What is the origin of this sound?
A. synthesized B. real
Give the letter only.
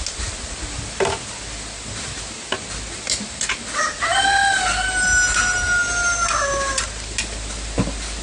B